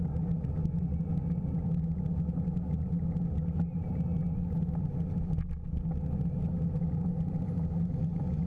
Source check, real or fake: real